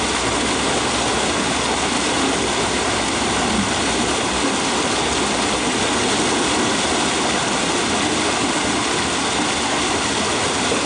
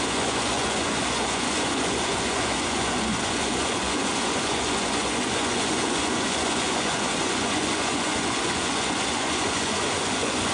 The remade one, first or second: second